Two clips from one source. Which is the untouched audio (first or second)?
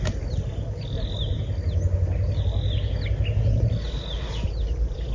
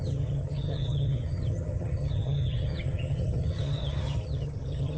first